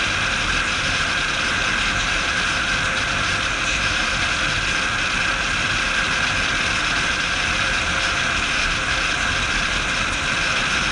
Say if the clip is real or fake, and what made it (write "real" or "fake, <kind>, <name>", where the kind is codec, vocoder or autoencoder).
real